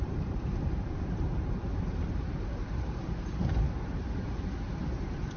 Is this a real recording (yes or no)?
no